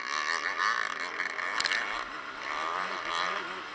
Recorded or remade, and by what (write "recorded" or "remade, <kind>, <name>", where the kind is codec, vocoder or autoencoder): recorded